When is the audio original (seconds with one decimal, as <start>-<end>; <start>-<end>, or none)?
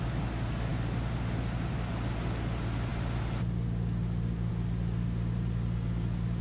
0.0-6.4